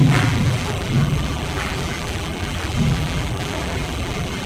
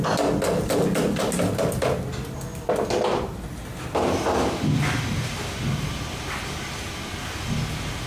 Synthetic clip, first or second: first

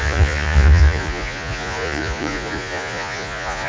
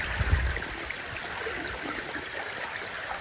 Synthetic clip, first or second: first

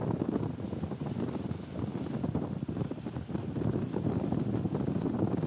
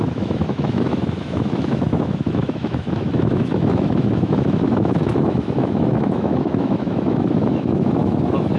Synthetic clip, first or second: second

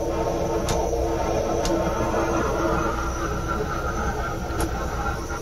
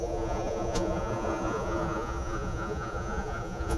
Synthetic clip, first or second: second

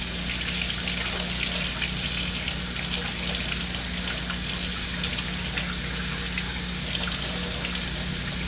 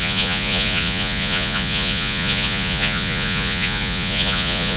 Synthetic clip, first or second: second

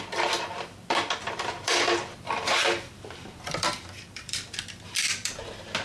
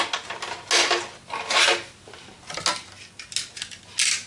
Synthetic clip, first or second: first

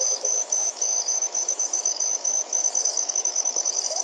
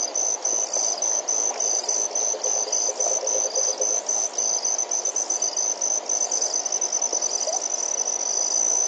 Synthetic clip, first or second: first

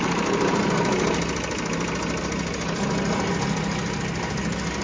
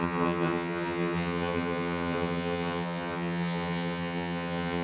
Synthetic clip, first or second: second